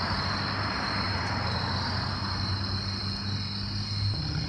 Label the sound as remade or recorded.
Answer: recorded